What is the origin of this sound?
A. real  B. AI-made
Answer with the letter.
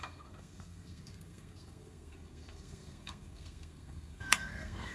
B